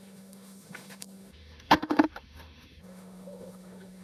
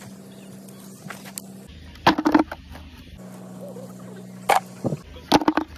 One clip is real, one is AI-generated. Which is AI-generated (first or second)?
first